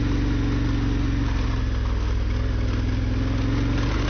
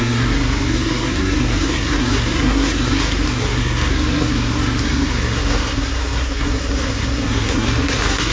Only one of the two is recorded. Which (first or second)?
first